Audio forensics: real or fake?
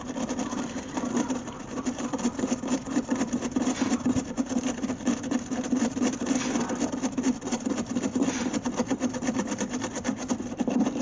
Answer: fake